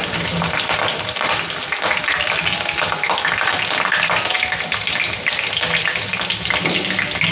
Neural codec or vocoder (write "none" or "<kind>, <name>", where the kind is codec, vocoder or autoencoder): none